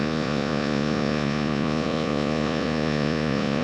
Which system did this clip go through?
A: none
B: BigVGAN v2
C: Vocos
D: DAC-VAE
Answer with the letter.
C